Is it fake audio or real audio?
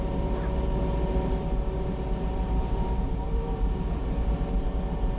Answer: fake